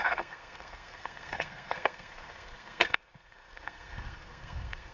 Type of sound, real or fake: fake